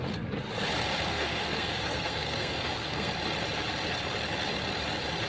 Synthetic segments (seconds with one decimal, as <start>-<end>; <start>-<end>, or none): 1.1-3.1